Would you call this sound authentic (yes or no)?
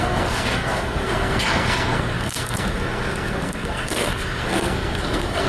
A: no